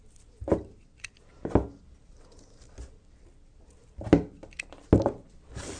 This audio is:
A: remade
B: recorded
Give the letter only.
B